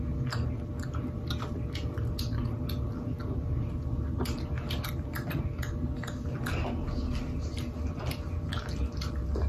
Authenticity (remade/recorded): recorded